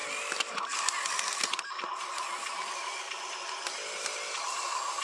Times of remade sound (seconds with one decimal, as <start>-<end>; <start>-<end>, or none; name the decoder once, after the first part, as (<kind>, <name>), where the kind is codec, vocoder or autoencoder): none

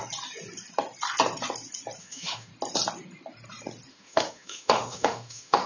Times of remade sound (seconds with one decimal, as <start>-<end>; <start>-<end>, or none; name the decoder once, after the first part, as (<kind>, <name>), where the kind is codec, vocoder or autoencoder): 2.0-2.5 (autoencoder, DAC-VAE); 3.9-5.7

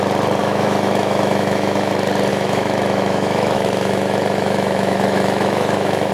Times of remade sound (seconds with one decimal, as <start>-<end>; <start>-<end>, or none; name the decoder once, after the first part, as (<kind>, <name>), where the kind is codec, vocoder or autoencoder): 0.4-1.9 (autoencoder, DAC-VAE); 2.3-6.1